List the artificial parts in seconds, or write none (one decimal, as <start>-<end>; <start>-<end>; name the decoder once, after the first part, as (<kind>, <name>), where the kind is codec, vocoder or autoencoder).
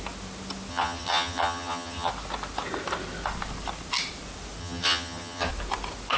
0.7-2.1 (vocoder, HiFi-GAN); 4.6-5.5